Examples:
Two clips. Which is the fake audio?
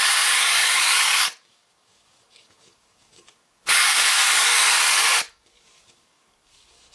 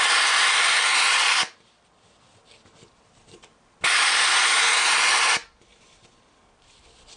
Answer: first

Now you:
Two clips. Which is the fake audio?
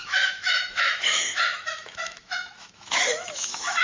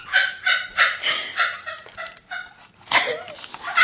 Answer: first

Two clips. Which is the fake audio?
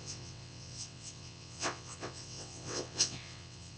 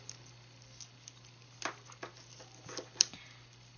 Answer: first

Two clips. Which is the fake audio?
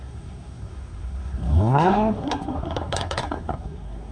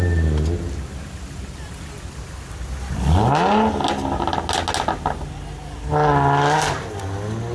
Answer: first